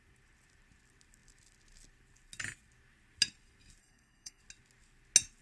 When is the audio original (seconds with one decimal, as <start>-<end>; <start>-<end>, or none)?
0.0-3.8; 4.4-5.4